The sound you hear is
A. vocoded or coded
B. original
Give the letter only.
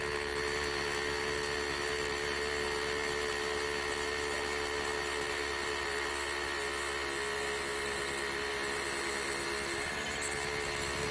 B